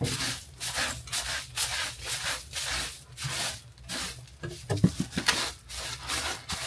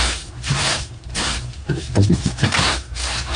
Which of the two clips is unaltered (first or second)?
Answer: first